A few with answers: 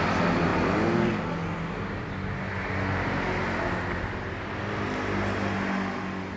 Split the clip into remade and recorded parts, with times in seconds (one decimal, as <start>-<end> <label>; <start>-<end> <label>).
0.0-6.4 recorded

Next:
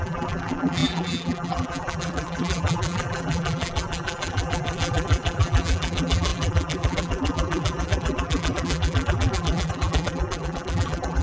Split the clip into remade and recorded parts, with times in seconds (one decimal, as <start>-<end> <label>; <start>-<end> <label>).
0.0-11.2 remade

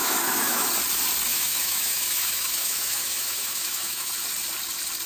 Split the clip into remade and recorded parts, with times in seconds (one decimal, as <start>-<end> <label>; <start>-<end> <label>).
0.0-0.7 remade; 0.7-1.3 recorded; 1.3-4.1 remade; 4.1-5.1 recorded